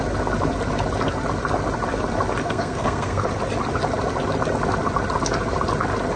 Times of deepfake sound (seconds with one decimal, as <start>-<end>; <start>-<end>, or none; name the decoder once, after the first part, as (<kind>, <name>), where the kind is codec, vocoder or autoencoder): 2.4-3.3 (codec, SNAC)